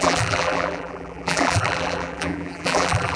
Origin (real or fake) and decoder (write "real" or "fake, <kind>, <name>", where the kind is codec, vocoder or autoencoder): fake, vocoder, BigVGAN v2